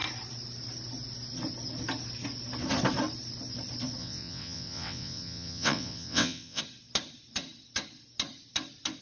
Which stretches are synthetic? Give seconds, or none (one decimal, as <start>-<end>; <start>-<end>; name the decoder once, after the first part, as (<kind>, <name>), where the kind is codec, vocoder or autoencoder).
4.0-6.6 (vocoder, WaveNeXt)